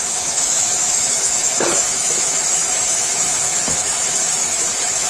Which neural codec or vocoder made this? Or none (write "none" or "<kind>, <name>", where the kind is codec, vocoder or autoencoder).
autoencoder, DAC-VAE